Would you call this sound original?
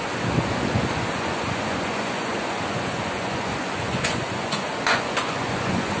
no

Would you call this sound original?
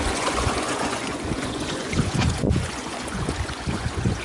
no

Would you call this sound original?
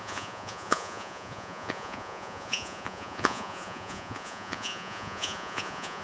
no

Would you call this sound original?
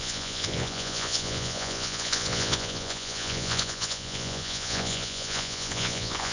no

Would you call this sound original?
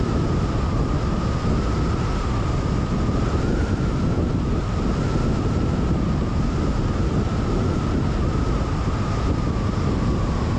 yes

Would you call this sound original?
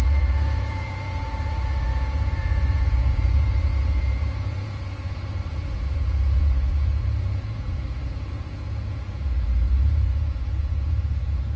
no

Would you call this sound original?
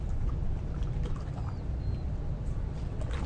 yes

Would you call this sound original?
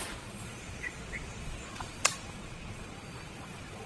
no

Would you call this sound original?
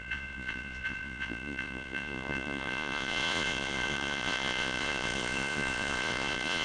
no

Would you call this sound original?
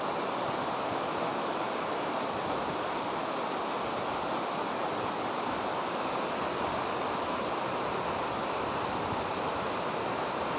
yes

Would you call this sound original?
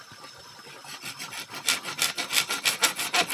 yes